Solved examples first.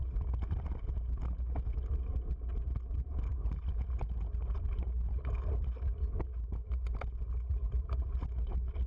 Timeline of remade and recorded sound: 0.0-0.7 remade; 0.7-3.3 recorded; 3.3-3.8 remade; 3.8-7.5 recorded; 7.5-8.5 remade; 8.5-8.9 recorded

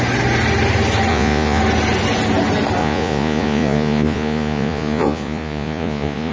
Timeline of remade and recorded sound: 0.0-1.1 recorded; 1.1-1.6 remade; 1.6-2.8 recorded; 2.8-6.3 remade